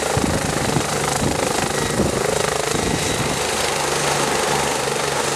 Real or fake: real